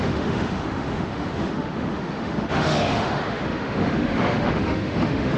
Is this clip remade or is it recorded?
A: remade